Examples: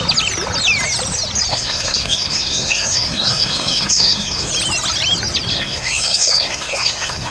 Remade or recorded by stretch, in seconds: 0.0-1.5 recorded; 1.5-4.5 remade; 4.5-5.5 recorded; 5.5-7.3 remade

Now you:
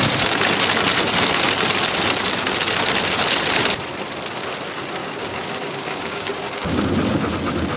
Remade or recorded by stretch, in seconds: 0.0-5.0 recorded; 5.0-6.8 remade; 6.8-7.8 recorded